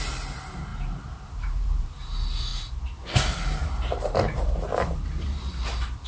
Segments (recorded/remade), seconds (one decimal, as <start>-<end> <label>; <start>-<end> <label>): 0.0-0.7 recorded; 0.7-2.0 remade; 2.0-2.5 recorded; 2.5-3.0 remade; 3.0-3.6 recorded; 3.6-5.5 remade; 5.5-6.1 recorded